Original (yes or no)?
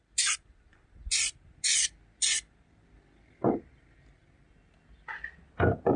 yes